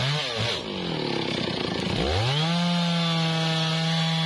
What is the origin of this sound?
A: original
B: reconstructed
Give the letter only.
A